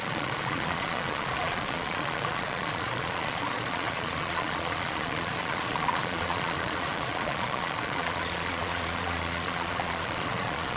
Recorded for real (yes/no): no